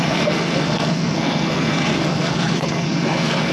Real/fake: fake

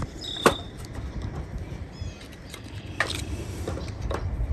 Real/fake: fake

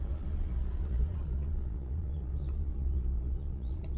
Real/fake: fake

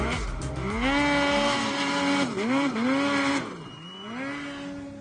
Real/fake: real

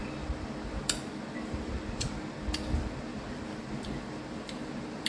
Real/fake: real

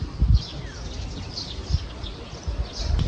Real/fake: real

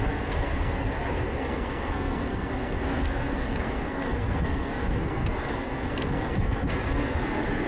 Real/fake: fake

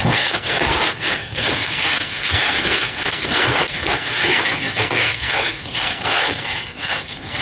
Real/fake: fake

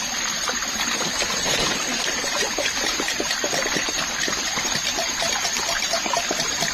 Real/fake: fake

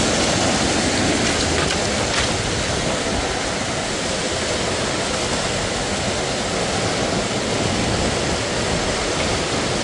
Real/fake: real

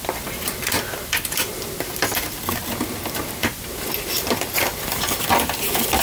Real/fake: real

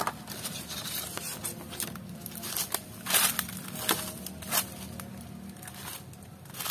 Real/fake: real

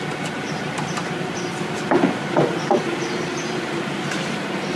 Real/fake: real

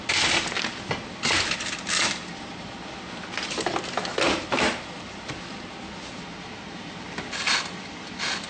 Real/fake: fake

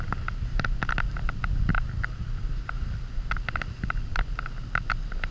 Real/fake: real